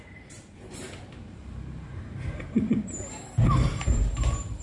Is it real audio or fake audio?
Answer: fake